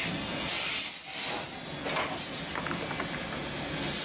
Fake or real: real